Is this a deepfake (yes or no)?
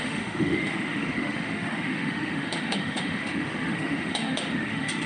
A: yes